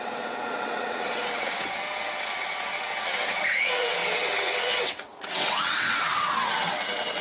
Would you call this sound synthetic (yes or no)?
yes